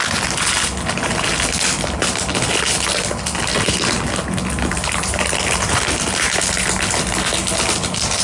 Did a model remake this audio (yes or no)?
no